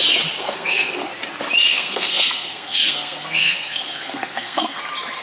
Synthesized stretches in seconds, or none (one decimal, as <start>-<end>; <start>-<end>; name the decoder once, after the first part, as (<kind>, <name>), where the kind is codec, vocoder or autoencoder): 0.4-1.1 (codec, SNAC); 1.7-4.8